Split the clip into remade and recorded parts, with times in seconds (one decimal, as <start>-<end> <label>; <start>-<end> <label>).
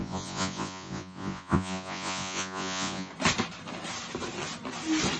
0.0-3.1 remade; 3.1-5.2 recorded